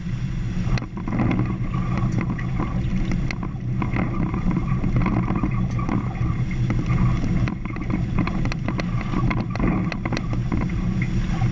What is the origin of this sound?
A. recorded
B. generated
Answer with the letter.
A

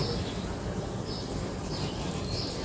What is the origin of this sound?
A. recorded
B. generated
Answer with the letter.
A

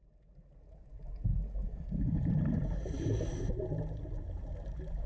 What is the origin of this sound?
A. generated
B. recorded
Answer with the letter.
B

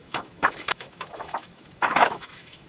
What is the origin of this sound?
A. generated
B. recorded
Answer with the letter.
A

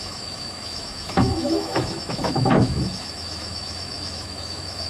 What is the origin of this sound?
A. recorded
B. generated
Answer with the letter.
B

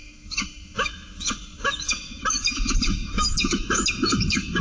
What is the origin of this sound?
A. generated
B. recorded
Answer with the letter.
A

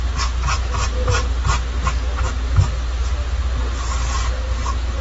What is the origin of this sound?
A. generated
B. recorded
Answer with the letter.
B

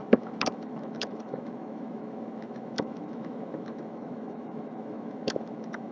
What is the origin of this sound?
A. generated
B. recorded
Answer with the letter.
A